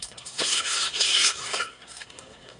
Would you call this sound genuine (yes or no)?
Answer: no